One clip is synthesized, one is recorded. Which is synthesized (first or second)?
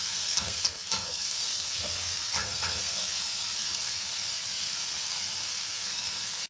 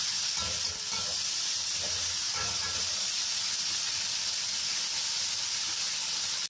first